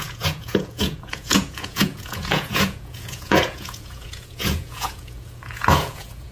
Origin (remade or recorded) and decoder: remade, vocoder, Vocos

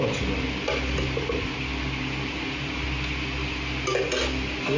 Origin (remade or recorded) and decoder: recorded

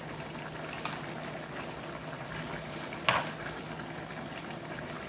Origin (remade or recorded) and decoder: recorded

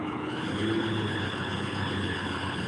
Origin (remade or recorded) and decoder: remade, codec, HILCodec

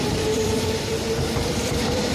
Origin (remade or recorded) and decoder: remade, vocoder, BigVGAN v2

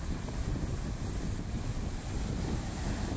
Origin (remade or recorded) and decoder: recorded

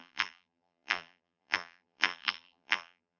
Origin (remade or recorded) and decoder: remade, vocoder, BigVGAN v2